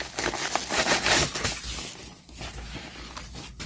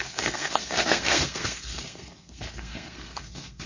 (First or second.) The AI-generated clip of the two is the second